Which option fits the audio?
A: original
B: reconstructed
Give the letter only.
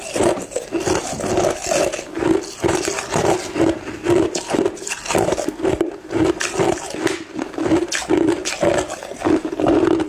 A